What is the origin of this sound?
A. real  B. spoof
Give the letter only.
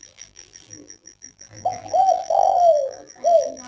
B